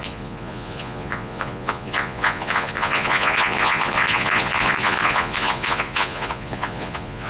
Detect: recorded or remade remade